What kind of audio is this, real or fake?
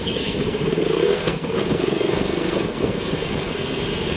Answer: fake